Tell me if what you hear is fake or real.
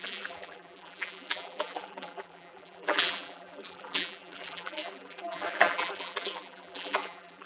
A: fake